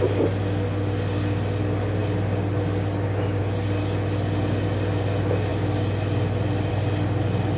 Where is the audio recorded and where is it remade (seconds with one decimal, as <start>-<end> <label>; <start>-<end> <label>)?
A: 0.0-7.6 recorded